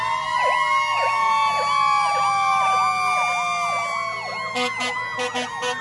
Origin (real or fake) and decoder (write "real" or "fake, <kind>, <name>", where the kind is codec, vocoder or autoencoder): real